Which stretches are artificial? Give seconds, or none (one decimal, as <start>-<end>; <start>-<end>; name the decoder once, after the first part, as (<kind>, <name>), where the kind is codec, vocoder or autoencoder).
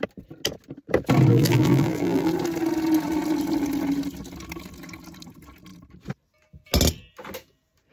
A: 1.3-2.3 (vocoder, BigVGAN v2)